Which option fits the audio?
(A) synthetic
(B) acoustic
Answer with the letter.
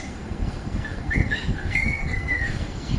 A